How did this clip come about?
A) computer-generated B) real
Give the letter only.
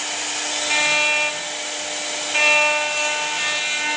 B